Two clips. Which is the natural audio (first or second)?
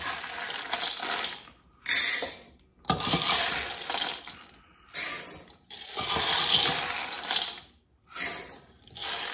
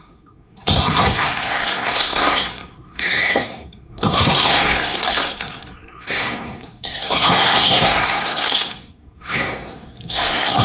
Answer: first